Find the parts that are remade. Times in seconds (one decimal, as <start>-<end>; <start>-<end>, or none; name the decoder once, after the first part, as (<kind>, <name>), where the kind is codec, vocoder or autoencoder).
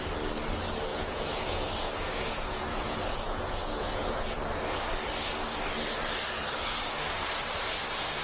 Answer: 0.9-4.2 (vocoder, Vocos)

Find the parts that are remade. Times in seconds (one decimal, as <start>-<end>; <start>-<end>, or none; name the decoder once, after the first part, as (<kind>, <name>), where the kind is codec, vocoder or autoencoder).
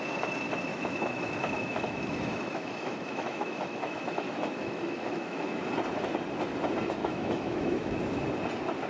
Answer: 0.7-5.6 (autoencoder, DAC-VAE); 7.0-8.0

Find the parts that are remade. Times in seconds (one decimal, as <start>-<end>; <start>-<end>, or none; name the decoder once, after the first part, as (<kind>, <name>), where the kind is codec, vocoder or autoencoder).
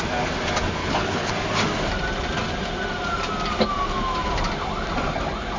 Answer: 0.8-1.3 (codec, HILCodec)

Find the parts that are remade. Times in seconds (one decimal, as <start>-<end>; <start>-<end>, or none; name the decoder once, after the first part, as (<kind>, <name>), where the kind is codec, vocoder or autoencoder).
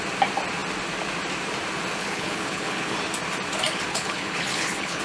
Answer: 2.0-2.9 (codec, HILCodec); 3.9-5.0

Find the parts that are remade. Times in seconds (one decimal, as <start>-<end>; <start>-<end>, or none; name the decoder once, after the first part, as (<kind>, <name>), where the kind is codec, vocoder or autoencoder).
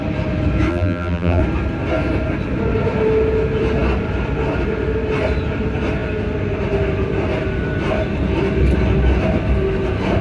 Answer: 0.7-1.4 (vocoder, BigVGAN v2)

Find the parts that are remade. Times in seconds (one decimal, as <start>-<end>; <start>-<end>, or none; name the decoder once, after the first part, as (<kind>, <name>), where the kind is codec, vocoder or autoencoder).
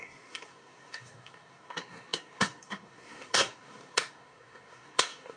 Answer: 0.0-5.4 (codec, SNAC)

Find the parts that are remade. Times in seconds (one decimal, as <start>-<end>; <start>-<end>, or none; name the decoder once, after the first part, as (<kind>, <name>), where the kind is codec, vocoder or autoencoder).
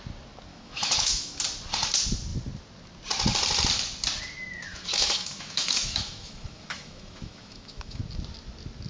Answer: 0.5-1.4 (autoencoder, DAC-VAE); 4.7-8.0